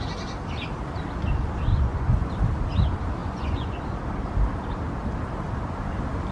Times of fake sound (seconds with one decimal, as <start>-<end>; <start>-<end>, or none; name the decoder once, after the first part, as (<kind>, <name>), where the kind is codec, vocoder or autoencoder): 1.7-2.3 (vocoder, Vocos); 3.2-3.8